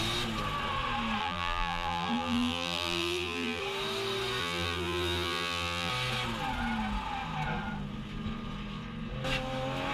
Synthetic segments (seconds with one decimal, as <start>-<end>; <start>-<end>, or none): 1.2-3.6; 4.4-5.9